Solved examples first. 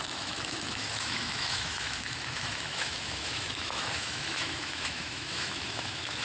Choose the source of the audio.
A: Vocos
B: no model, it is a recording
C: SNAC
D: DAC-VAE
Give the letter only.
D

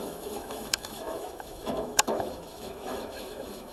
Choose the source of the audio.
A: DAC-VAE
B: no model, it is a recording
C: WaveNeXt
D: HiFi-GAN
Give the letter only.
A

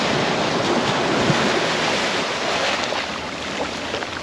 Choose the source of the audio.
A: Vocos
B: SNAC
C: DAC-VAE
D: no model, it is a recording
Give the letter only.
D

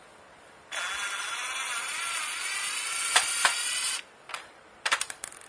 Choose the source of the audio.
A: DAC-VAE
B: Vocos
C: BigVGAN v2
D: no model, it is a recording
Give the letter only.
D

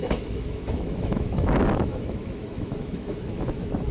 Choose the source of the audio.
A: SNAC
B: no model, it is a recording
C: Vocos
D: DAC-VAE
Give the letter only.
D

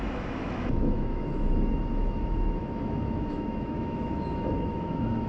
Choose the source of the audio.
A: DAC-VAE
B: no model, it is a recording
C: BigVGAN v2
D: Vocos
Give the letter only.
A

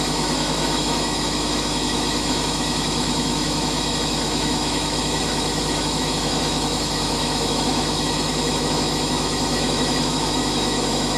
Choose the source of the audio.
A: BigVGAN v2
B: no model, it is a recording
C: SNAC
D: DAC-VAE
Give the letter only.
D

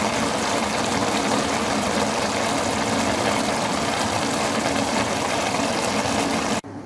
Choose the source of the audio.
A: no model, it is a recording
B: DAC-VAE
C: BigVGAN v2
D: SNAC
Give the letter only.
A